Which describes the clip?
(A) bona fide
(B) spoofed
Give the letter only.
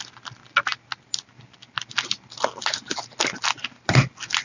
A